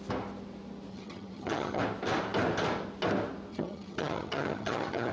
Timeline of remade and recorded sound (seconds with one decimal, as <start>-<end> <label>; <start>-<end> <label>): 0.0-0.9 recorded; 0.9-1.8 remade; 1.8-3.5 recorded; 3.5-5.1 remade